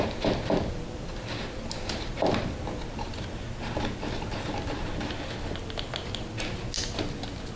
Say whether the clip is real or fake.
real